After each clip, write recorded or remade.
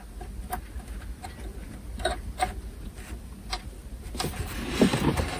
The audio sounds recorded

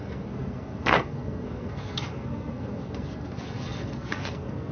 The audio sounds remade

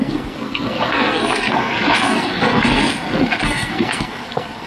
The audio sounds remade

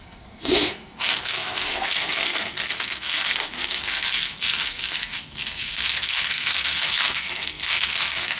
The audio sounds remade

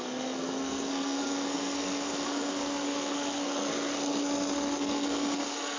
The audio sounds remade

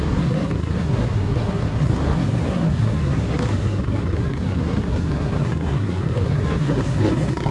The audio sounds remade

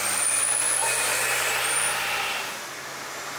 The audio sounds recorded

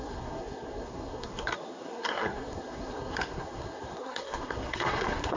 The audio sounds remade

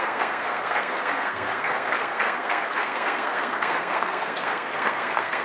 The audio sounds remade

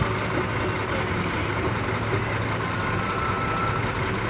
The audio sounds recorded